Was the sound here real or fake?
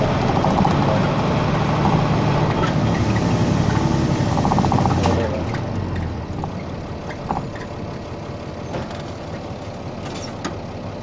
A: real